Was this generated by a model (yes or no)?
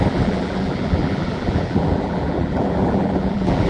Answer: yes